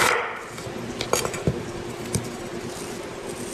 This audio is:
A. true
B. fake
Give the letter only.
A